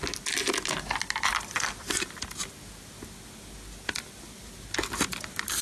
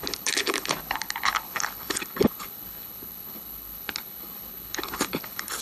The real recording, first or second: first